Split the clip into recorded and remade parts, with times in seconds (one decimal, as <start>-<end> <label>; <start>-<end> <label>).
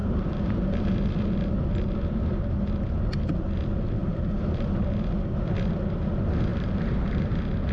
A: 0.0-1.0 remade; 1.0-4.0 recorded; 4.0-4.7 remade; 4.7-6.5 recorded; 6.5-7.3 remade; 7.3-7.7 recorded